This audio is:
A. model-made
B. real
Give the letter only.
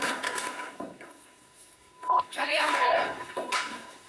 A